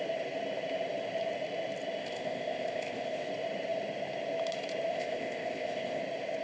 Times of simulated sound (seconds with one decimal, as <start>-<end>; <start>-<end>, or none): 2.0-3.3; 4.9-6.0

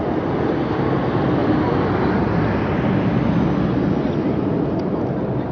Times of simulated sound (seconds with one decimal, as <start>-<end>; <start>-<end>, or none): none

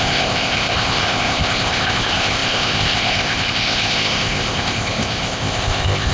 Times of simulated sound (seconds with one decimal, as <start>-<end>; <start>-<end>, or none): 0.0-6.1

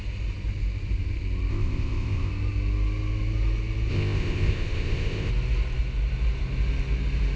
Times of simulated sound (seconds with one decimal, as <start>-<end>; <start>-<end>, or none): 1.5-2.3; 3.9-5.3